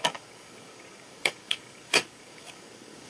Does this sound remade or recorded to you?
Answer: remade